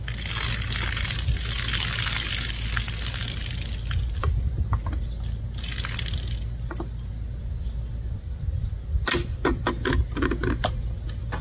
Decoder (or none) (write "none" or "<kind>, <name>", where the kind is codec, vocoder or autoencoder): none